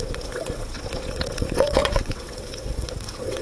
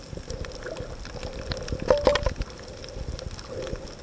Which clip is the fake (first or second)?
first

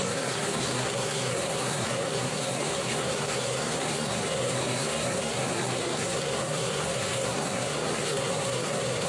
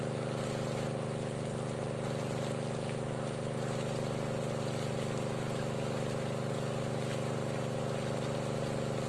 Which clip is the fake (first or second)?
first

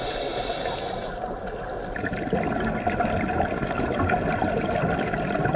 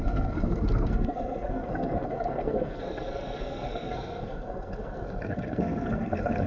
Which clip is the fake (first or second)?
second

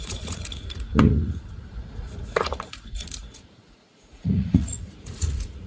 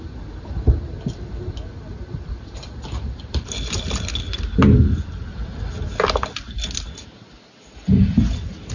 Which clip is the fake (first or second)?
first